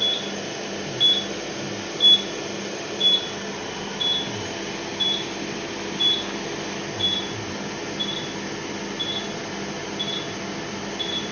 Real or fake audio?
real